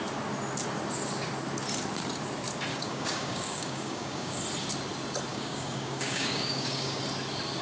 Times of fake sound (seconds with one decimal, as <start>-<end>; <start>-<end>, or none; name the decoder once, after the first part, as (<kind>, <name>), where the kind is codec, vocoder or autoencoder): 2.7-4.4 (codec, DAC); 5.3-7.0